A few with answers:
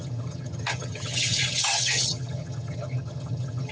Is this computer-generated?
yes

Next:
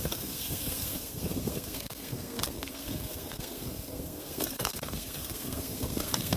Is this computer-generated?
yes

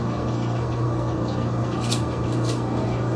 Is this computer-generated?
yes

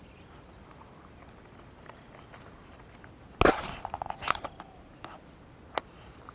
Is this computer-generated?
no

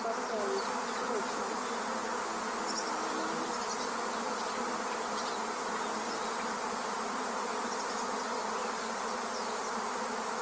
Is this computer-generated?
no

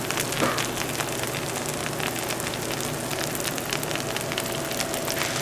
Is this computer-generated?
no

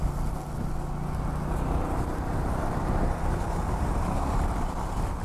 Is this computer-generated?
no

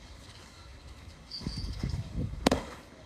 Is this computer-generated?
yes